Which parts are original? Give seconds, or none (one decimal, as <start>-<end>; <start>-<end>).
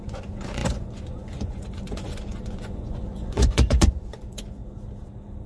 4.6-5.5